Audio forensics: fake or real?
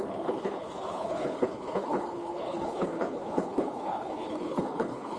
fake